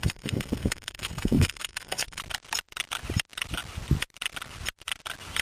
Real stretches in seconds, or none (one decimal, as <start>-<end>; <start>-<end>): 2.2-5.4